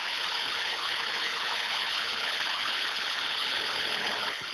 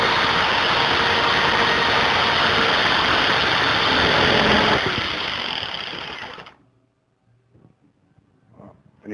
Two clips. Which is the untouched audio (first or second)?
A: second